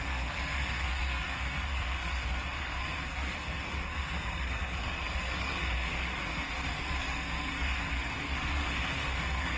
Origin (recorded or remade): remade